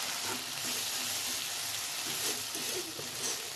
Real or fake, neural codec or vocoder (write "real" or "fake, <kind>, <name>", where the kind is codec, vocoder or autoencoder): real